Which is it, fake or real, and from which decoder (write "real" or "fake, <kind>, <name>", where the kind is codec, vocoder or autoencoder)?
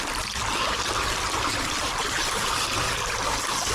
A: fake, vocoder, BigVGAN v2